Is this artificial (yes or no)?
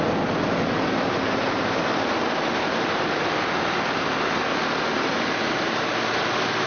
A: no